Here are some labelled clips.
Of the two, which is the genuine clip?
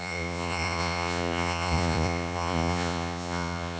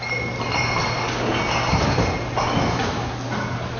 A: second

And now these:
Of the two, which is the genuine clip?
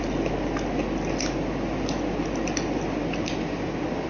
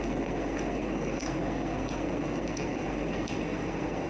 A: first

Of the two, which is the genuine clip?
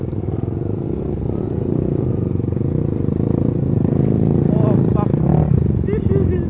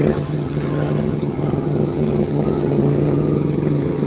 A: first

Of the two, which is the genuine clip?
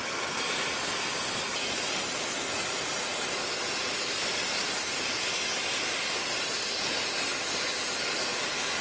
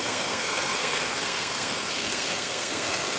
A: first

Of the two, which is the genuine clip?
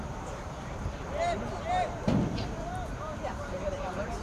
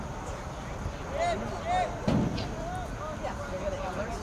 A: second